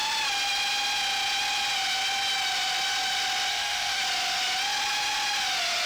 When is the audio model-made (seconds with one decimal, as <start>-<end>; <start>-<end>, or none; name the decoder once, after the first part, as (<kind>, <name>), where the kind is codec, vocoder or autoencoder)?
3.5-4.0 (autoencoder, DAC-VAE)